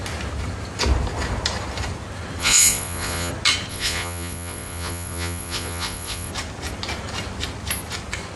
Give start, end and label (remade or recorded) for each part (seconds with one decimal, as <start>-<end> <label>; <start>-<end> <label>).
0.0-2.4 recorded; 2.4-3.3 remade; 3.3-3.7 recorded; 3.7-6.3 remade; 6.3-8.4 recorded